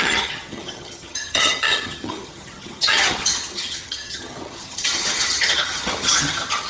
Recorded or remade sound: remade